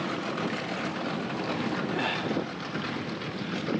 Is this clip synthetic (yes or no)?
no